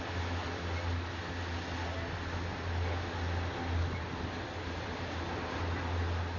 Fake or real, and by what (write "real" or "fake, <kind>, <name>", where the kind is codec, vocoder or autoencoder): real